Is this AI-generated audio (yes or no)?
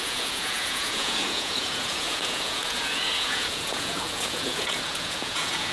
yes